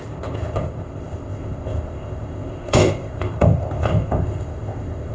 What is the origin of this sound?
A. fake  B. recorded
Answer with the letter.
A